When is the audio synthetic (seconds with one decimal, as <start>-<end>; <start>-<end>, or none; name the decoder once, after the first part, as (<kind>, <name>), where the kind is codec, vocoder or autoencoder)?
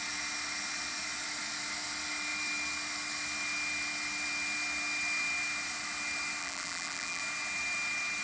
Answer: 6.4-7.2 (vocoder, BigVGAN v2)